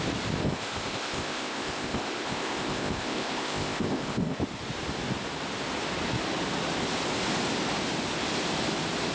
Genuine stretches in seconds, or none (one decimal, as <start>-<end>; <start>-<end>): 0.0-0.4; 4.4-9.1